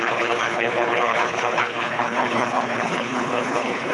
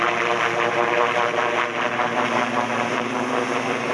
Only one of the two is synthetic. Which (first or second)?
first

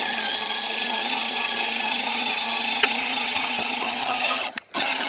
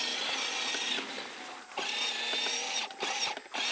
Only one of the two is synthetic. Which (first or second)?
first